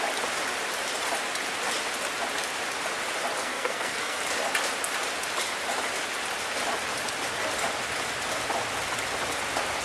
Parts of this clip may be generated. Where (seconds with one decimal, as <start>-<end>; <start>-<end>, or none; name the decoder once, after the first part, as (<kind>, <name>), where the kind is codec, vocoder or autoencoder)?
3.4-4.2 (codec, SNAC)